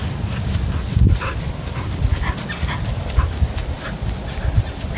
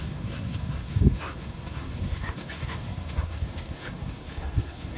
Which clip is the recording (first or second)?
first